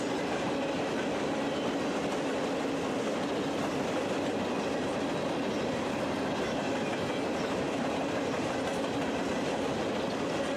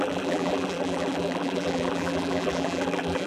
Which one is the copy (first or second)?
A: second